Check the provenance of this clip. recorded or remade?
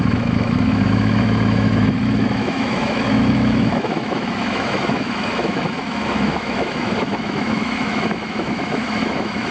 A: remade